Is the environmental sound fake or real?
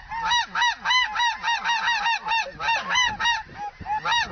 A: real